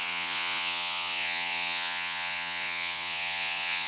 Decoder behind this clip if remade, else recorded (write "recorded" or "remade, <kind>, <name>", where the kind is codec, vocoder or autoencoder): remade, vocoder, Vocos